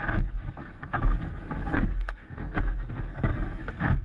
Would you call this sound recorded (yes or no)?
no